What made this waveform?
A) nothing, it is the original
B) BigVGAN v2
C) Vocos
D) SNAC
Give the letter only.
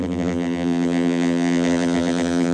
B